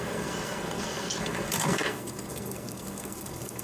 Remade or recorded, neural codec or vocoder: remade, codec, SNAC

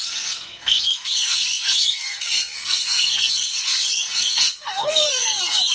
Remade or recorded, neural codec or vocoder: remade, codec, SNAC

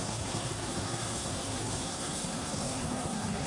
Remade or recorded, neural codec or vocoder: remade, codec, SNAC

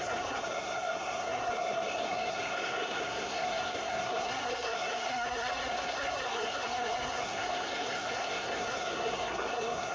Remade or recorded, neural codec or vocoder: remade, codec, SNAC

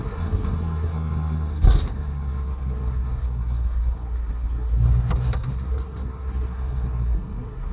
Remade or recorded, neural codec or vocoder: remade, codec, SNAC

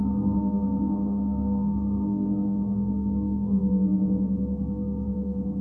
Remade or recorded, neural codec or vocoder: remade, codec, SNAC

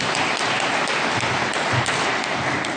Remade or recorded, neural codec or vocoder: recorded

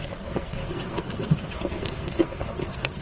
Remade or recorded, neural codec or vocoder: remade, codec, SNAC